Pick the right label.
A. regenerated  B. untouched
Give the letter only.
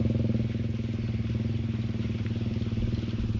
B